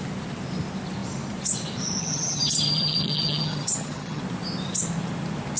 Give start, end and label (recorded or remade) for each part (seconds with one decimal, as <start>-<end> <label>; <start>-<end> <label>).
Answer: 0.0-2.0 recorded; 2.0-4.2 remade; 4.2-5.6 recorded